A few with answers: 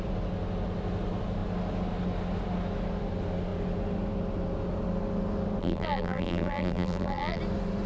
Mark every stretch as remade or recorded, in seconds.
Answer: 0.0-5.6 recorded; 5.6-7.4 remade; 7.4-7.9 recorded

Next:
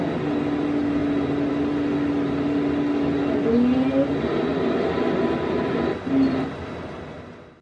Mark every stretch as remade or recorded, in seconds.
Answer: 0.0-4.5 recorded; 4.5-5.7 remade; 5.7-7.6 recorded

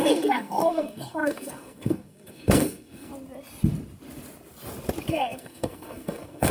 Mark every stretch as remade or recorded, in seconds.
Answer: 0.0-3.1 remade; 3.1-5.1 recorded; 5.1-6.5 remade

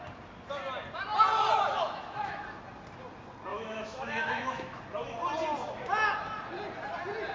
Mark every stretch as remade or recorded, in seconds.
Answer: 0.0-1.7 recorded; 1.7-2.4 remade; 2.4-3.5 recorded; 3.5-4.8 remade; 4.8-7.3 recorded

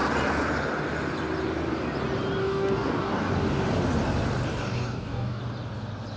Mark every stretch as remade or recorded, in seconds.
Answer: 0.0-2.4 recorded; 2.4-3.3 remade; 3.3-4.5 recorded; 4.5-5.4 remade; 5.4-6.2 recorded

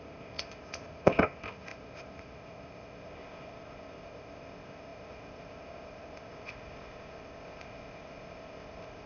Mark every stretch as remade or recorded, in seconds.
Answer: 0.0-9.1 remade